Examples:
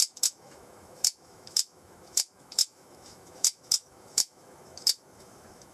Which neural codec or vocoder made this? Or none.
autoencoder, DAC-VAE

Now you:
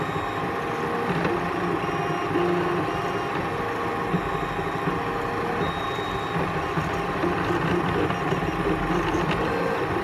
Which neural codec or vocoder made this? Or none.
none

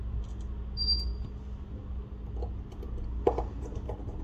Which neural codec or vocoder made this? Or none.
none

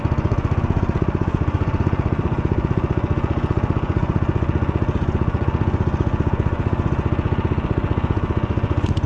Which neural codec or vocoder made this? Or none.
vocoder, Vocos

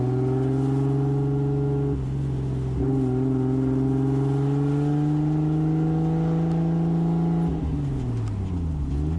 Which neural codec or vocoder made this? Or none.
none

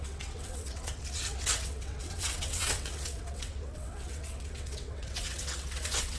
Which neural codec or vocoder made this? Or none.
vocoder, WaveNeXt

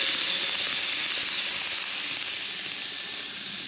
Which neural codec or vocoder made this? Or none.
none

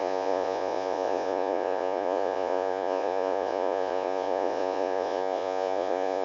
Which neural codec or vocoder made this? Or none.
vocoder, Vocos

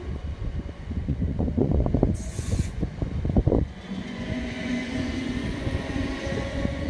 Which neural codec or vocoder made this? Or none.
vocoder, Vocos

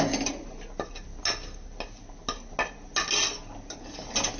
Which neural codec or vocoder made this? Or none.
none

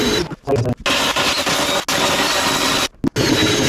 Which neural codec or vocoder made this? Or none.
none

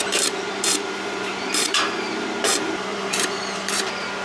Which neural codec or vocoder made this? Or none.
vocoder, BigVGAN v2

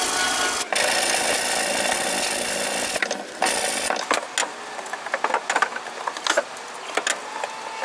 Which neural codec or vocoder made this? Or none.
none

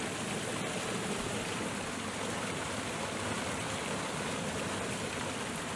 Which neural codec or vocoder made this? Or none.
none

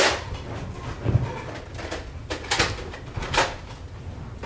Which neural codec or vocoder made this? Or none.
none